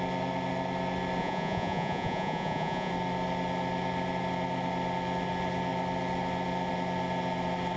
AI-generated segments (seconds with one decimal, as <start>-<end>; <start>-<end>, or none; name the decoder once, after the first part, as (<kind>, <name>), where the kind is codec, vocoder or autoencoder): 1.2-2.9 (vocoder, Vocos)

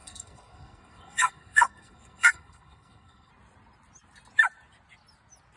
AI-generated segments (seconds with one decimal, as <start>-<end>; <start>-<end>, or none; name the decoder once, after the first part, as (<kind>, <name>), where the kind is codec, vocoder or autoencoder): 0.0-3.3 (codec, SNAC)

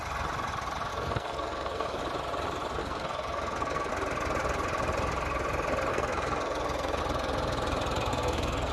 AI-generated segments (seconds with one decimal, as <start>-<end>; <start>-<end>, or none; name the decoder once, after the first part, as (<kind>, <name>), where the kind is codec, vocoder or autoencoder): 0.9-2.0 (codec, SNAC); 2.8-3.9; 5.9-7.0; 8.1-8.7